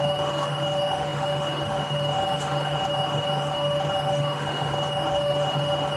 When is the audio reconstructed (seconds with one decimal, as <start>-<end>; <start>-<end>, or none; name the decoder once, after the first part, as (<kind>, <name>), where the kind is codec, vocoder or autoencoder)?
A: 0.0-6.0 (autoencoder, DAC-VAE)